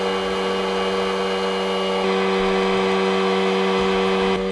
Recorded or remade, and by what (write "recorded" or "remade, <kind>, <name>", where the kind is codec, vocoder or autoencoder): recorded